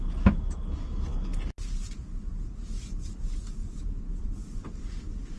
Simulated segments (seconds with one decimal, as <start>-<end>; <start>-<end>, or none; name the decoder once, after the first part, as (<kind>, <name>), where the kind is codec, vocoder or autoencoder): none